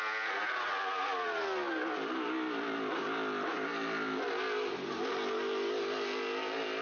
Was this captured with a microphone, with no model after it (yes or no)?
yes